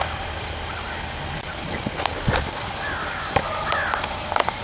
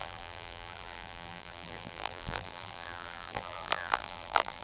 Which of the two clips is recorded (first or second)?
first